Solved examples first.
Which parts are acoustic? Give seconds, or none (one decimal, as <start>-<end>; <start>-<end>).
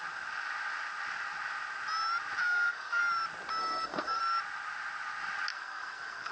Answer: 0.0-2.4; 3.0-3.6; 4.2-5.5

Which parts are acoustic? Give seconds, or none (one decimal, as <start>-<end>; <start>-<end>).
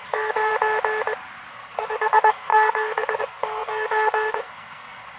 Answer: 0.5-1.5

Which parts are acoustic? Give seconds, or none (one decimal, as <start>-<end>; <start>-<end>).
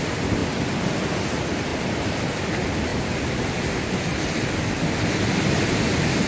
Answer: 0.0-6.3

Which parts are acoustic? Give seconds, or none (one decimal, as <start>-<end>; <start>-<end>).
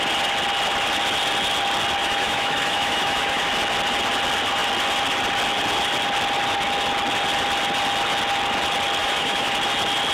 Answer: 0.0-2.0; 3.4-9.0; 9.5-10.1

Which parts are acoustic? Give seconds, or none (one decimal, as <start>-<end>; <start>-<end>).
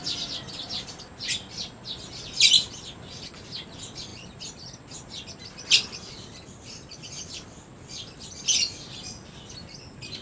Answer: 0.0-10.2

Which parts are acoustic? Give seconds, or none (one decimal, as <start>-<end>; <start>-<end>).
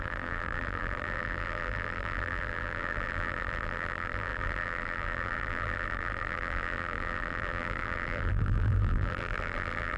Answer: none